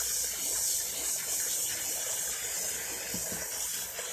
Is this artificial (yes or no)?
no